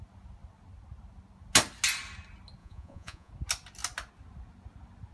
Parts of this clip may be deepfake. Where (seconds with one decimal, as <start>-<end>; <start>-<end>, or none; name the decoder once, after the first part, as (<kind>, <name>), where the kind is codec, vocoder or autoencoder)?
2.6-3.3 (vocoder, Vocos)